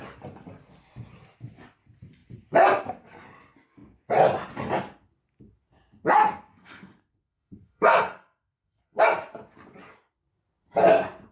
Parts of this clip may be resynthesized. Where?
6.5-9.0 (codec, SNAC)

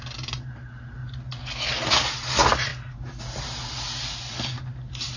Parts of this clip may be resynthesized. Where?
none

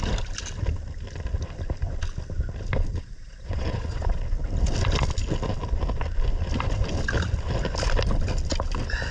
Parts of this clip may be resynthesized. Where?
2.9-4.2 (vocoder, Vocos)

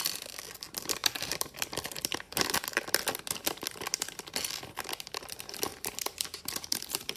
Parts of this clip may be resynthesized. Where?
1.0-1.6 (vocoder, BigVGAN v2); 5.7-7.2

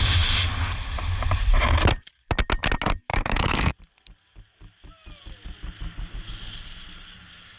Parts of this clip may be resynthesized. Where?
3.1-3.7 (autoencoder, DAC-VAE)

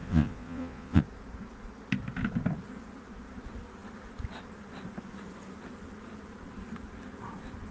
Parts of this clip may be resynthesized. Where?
0.0-1.0 (vocoder, Vocos)